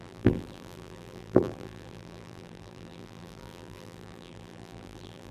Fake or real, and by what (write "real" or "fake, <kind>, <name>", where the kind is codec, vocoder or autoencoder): fake, vocoder, BigVGAN v2